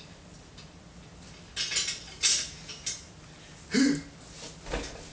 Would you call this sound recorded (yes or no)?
yes